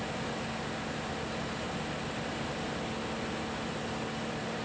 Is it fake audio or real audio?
real